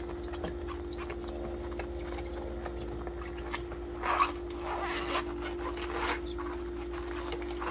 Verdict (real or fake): real